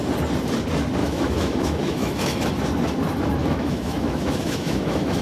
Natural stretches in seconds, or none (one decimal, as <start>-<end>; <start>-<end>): 0.0-1.0; 2.5-3.4